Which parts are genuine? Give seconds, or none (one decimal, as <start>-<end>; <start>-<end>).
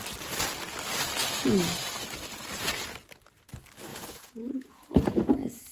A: 0.0-3.9